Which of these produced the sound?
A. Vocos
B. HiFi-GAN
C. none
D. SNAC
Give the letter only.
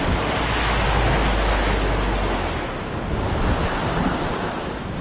C